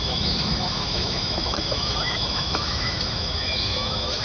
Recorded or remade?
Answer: remade